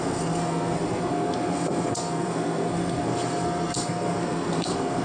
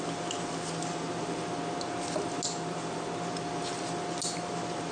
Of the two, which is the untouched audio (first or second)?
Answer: second